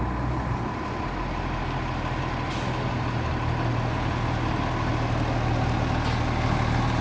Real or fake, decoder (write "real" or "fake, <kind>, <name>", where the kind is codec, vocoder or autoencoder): real